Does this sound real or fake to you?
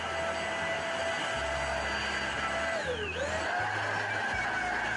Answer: real